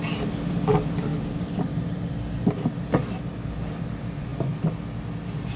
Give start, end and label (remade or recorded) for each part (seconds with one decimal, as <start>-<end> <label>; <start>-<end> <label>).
0.0-5.6 recorded